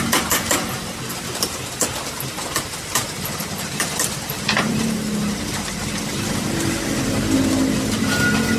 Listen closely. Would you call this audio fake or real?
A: real